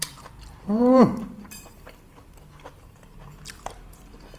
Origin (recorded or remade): remade